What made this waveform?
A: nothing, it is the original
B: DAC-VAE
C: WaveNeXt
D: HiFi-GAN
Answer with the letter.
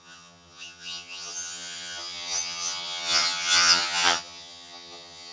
D